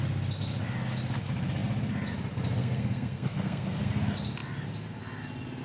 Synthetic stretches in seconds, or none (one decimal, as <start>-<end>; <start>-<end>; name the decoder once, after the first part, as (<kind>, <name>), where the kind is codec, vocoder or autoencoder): 2.6-3.9 (codec, SNAC)